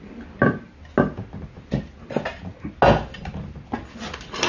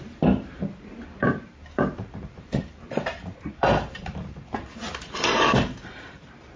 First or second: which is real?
first